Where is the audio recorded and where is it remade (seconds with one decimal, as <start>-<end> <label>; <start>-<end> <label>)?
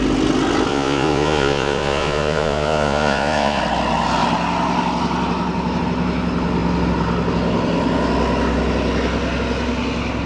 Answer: 0.0-0.7 recorded; 0.7-3.6 remade; 3.6-10.3 recorded